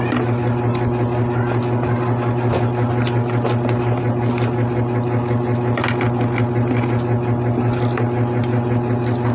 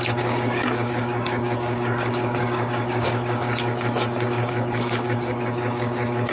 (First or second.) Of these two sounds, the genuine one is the first